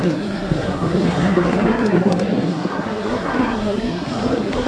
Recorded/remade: remade